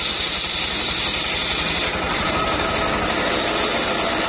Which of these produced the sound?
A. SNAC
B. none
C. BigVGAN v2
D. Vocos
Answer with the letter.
B